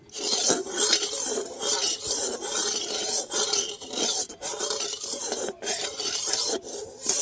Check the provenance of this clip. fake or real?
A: real